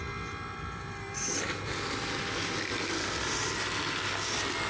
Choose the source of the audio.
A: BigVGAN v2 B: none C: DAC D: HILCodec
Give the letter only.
B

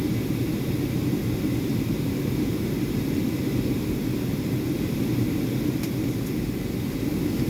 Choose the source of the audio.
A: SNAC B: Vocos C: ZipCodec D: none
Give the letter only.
D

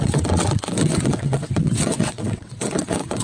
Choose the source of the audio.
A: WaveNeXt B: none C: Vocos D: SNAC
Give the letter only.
A